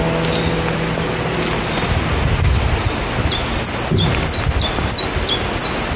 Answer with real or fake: real